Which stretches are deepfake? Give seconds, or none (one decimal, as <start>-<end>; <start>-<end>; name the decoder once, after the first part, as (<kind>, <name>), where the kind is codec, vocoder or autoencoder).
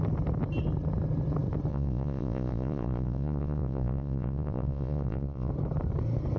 1.7-5.5 (vocoder, Vocos)